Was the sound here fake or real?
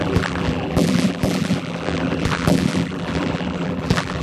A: fake